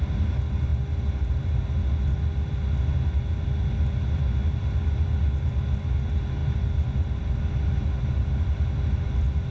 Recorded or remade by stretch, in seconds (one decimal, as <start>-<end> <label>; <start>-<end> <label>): 0.0-9.5 recorded